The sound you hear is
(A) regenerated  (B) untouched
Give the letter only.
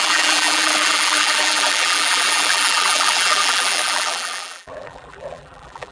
A